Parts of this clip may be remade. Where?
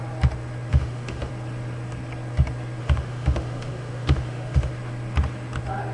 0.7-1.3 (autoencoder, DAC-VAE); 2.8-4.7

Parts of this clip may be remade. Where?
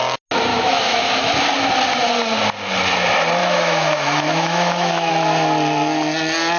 0.5-1.3 (autoencoder, DAC-VAE); 3.4-5.1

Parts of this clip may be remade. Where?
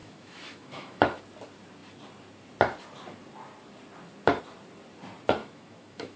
0.0-1.2 (autoencoder, DAC-VAE); 5.4-6.2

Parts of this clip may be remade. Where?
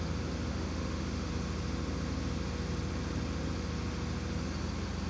0.5-1.3 (autoencoder, DAC-VAE)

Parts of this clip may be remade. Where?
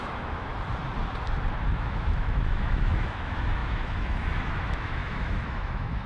0.0-0.5 (autoencoder, DAC-VAE); 1.7-6.1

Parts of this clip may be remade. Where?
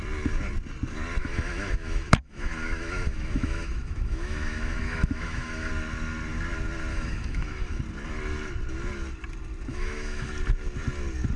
1.2-5.7 (autoencoder, DAC-VAE); 6.9-7.8; 9.7-10.3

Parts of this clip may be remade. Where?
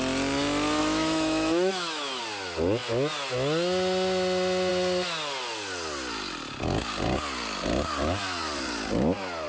0.8-2.2 (autoencoder, DAC-VAE)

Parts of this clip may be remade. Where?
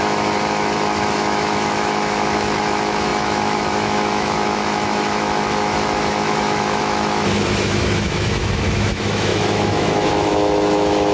0.0-11.1 (autoencoder, DAC-VAE)